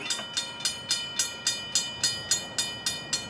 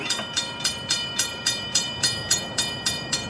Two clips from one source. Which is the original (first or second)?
first